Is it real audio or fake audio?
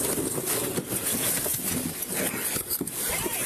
real